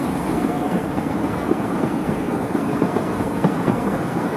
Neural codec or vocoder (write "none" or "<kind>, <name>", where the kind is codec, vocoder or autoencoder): codec, SNAC